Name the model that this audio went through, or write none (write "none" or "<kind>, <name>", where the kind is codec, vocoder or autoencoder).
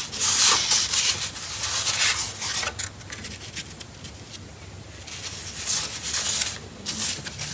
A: none